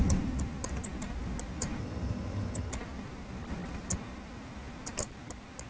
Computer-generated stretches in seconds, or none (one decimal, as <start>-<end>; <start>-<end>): 1.8-2.7